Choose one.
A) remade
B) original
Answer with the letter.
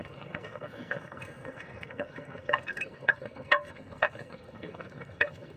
A